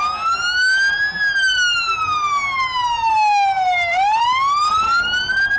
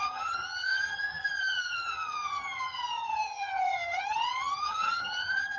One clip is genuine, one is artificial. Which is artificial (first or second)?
second